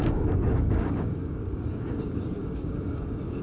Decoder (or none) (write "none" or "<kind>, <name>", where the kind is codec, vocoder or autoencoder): codec, DAC